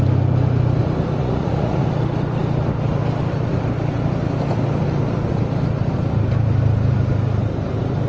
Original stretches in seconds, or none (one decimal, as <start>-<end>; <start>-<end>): 0.0-1.2; 1.9-8.1